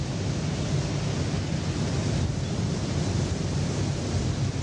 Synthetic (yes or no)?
no